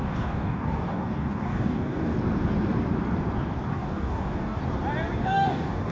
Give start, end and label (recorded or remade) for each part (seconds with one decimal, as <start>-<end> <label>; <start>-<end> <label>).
0.0-2.1 remade; 2.1-3.7 recorded; 3.7-4.6 remade; 4.6-5.2 recorded; 5.2-5.9 remade